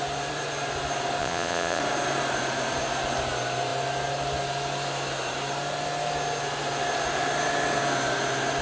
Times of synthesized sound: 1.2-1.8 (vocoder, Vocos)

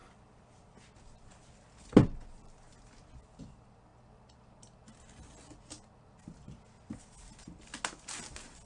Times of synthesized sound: none

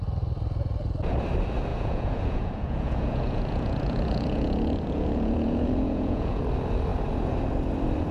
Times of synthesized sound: 1.7-6.4 (vocoder, Vocos)